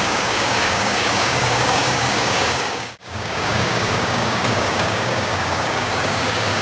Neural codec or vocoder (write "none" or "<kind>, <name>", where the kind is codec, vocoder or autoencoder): codec, DAC